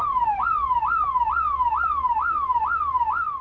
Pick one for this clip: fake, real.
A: real